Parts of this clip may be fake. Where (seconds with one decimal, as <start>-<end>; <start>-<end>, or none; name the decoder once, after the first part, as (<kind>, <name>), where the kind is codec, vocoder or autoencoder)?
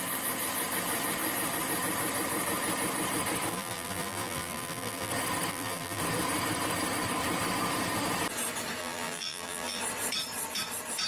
3.5-5.1 (vocoder, BigVGAN v2); 5.5-6.0; 8.8-9.8